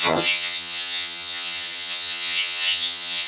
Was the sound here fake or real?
fake